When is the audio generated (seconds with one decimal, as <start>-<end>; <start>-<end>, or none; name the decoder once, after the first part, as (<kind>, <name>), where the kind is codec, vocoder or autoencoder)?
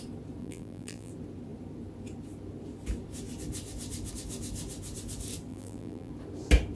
0.4-1.1 (vocoder, BigVGAN v2); 5.5-6.1